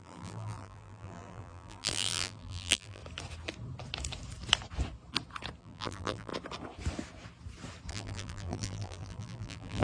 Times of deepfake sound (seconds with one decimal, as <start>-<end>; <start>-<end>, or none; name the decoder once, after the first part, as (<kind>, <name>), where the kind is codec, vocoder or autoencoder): 0.0-3.0 (vocoder, BigVGAN v2); 5.6-6.3; 7.9-9.8